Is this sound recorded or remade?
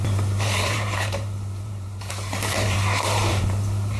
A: remade